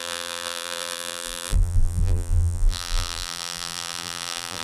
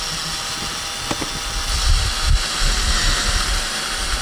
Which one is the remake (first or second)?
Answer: first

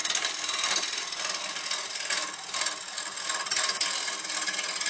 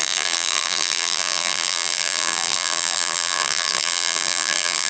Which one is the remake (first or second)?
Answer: second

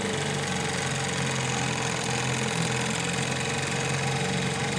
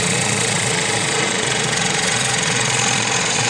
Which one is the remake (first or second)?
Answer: second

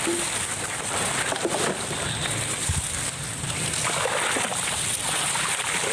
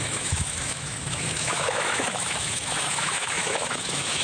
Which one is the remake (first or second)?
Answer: second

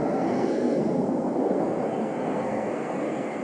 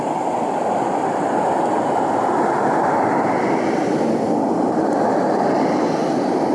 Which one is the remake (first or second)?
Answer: first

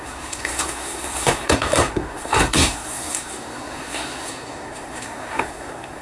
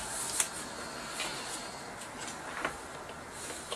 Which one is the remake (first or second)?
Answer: first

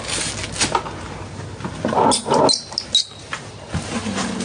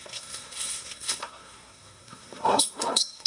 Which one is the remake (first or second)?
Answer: second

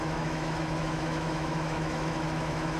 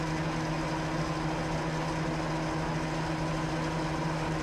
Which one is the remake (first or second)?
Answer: first